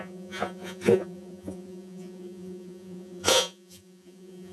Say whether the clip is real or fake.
fake